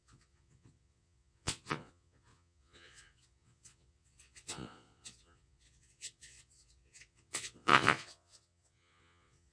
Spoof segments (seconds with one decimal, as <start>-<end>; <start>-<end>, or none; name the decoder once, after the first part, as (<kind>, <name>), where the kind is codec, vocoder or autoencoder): 0.0-9.5 (vocoder, Vocos)